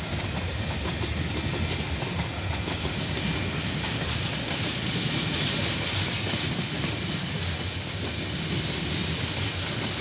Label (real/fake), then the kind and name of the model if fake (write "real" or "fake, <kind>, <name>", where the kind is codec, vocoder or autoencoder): real